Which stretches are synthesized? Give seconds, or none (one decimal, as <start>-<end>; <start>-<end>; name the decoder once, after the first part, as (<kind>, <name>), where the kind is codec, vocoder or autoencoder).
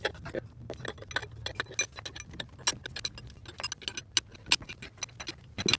none